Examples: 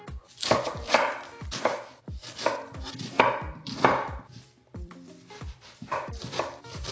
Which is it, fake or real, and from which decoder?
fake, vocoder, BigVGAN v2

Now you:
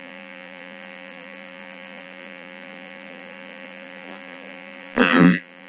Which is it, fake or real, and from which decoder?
fake, vocoder, BigVGAN v2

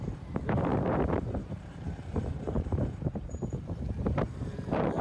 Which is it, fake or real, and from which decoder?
fake, vocoder, BigVGAN v2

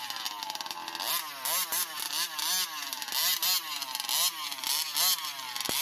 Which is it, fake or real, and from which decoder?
real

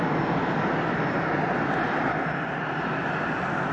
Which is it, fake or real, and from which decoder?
real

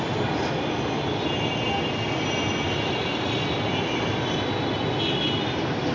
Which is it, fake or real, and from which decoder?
real